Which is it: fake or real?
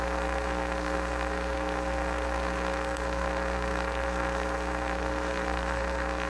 fake